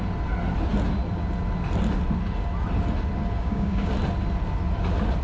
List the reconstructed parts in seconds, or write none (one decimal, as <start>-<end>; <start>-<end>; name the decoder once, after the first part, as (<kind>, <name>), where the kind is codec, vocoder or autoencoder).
3.4-3.9 (codec, DAC)